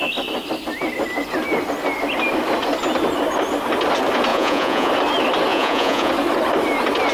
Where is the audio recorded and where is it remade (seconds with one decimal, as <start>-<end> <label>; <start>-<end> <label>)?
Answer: 0.0-4.3 recorded; 4.3-4.9 remade; 4.9-5.5 recorded; 5.5-6.1 remade; 6.1-7.1 recorded